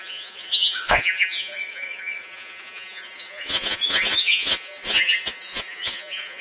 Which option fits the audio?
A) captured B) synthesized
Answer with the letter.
B